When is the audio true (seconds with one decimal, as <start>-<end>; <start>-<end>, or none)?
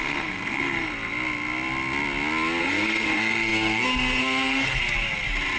0.9-2.6; 4.8-5.6